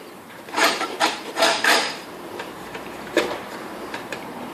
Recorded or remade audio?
remade